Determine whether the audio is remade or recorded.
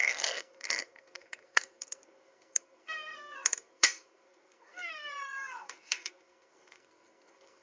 remade